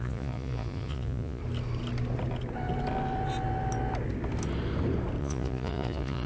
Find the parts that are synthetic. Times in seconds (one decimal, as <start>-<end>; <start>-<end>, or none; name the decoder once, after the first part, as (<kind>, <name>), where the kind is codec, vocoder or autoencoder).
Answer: 0.0-1.4 (vocoder, Vocos); 5.2-6.3